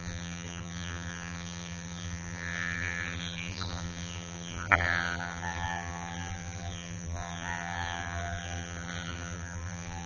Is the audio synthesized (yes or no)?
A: yes